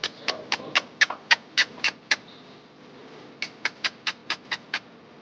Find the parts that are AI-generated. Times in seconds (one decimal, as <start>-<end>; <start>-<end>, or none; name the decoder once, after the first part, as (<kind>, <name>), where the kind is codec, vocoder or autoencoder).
1.7-3.0 (vocoder, BigVGAN v2); 3.7-5.2